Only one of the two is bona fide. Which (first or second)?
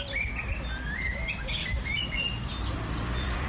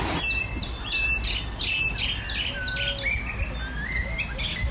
second